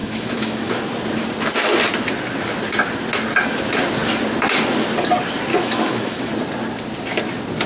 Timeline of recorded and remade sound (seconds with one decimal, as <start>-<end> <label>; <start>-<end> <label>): 0.0-0.7 remade; 0.7-5.5 recorded; 5.5-6.3 remade; 6.3-7.7 recorded